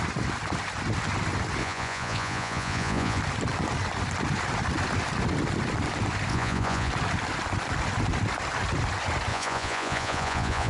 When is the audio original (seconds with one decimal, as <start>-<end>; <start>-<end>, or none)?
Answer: 0.0-1.6; 3.2-6.3; 6.9-9.3